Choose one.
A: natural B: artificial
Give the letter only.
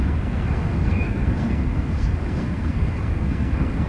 B